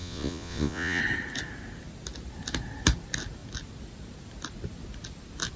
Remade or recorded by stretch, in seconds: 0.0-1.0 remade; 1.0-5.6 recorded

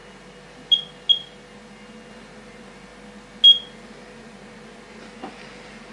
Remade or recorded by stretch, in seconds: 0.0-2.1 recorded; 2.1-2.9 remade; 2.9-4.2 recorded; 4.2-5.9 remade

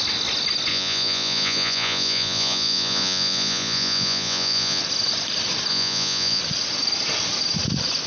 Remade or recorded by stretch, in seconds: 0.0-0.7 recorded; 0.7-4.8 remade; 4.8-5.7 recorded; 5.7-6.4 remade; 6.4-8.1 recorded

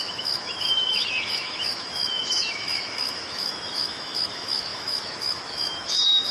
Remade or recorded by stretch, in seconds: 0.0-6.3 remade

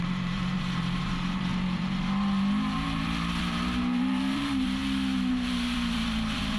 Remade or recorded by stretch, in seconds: 0.0-4.8 remade; 4.8-5.3 recorded; 5.3-6.6 remade

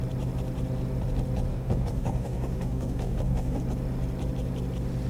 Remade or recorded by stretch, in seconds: 0.0-1.5 recorded; 1.5-3.6 remade; 3.6-5.1 recorded

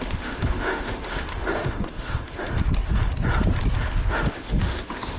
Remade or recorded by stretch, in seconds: 0.0-2.6 remade; 2.6-4.0 recorded; 4.0-5.2 remade

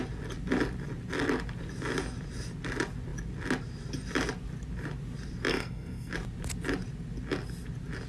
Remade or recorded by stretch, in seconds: 0.0-5.5 recorded; 5.5-6.1 remade; 6.1-8.1 recorded